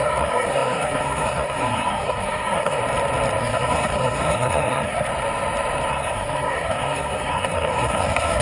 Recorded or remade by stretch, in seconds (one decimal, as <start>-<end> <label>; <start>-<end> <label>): 0.0-2.8 remade; 2.8-3.4 recorded; 3.4-5.1 remade; 5.1-5.9 recorded; 5.9-8.4 remade